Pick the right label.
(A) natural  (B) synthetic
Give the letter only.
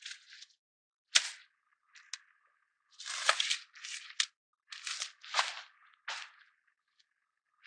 A